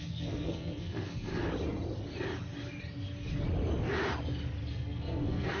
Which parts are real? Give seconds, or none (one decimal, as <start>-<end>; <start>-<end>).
1.3-4.7